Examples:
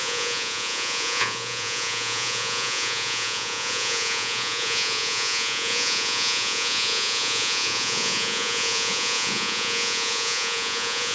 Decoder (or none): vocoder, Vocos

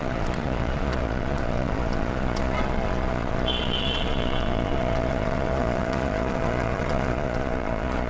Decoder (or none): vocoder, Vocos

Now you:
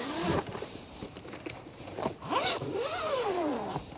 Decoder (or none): vocoder, BigVGAN v2